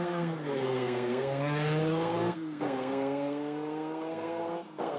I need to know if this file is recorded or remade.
remade